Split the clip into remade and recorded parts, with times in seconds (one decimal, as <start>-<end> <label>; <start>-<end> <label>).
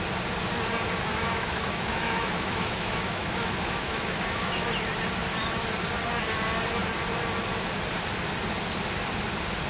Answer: 0.0-1.1 recorded; 1.1-4.7 remade; 4.7-9.7 recorded